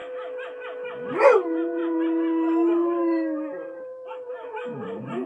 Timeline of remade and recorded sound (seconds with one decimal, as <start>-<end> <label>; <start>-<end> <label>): 0.0-5.3 recorded